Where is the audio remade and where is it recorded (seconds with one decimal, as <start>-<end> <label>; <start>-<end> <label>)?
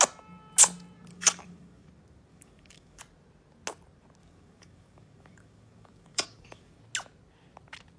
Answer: 0.0-1.1 recorded; 1.1-1.9 remade; 1.9-2.3 recorded; 2.3-3.0 remade; 3.0-4.2 recorded; 4.2-6.8 remade; 6.8-8.0 recorded